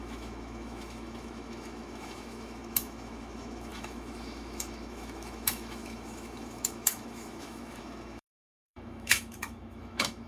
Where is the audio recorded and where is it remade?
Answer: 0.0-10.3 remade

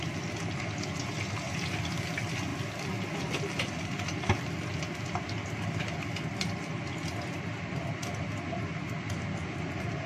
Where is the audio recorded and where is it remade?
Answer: 0.0-10.1 recorded

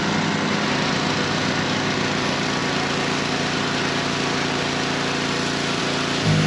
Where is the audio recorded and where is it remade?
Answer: 0.0-6.5 recorded

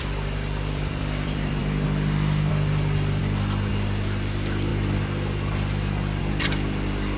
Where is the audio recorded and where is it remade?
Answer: 0.0-1.6 remade; 1.6-2.5 recorded; 2.5-3.2 remade; 3.2-3.7 recorded; 3.7-4.7 remade; 4.7-6.2 recorded; 6.2-7.2 remade